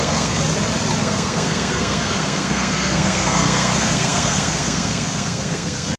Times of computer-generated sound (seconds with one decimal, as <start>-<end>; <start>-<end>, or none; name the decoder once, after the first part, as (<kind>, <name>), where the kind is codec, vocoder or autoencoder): 0.0-0.4 (codec, SNAC); 1.0-6.0